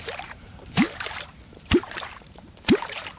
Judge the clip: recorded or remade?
remade